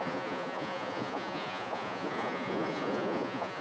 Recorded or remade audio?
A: remade